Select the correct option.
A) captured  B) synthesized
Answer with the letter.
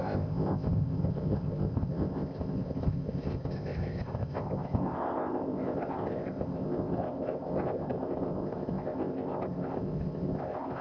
B